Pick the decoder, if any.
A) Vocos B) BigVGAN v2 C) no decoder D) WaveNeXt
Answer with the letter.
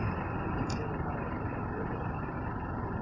B